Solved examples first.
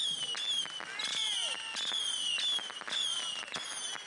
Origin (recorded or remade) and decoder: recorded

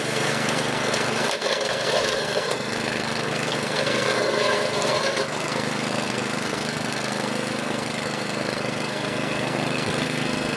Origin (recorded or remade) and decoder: remade, codec, SNAC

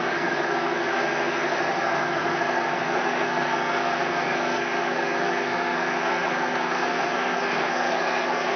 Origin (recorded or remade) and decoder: remade, codec, SNAC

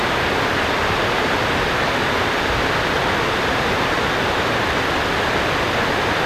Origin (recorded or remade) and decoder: recorded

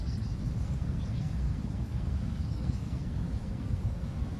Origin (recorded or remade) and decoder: remade, codec, SNAC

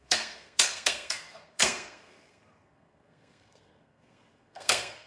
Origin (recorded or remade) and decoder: remade, codec, SNAC